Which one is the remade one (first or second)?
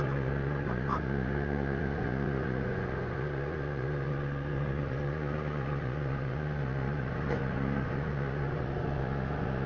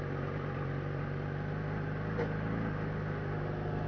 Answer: first